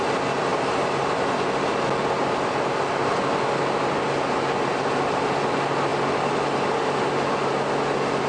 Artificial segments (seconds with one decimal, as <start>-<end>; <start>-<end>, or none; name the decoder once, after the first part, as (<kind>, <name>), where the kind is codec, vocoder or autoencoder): none